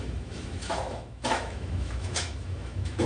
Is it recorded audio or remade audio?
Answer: remade